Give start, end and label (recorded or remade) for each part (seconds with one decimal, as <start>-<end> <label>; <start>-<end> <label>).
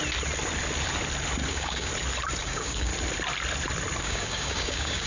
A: 0.0-1.5 recorded; 1.5-1.9 remade; 1.9-2.4 recorded; 2.4-2.9 remade; 2.9-4.0 recorded; 4.0-5.1 remade